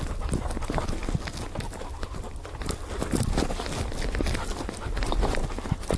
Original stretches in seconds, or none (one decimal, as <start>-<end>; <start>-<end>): 0.0-6.0